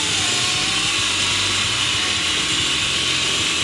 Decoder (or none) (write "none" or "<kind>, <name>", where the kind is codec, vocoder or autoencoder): none